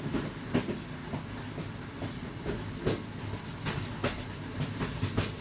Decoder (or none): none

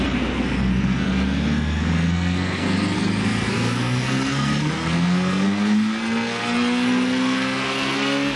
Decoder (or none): codec, SNAC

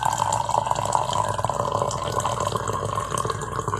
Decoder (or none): none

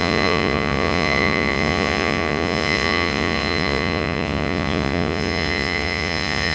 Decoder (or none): vocoder, Vocos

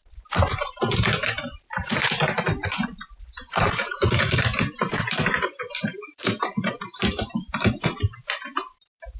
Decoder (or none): vocoder, BigVGAN v2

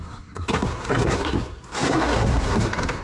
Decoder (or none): codec, SNAC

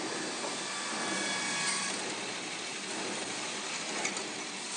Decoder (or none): none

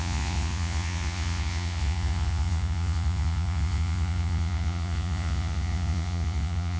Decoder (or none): vocoder, Vocos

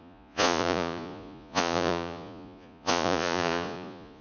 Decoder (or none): vocoder, Vocos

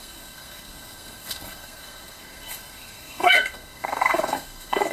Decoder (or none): codec, SNAC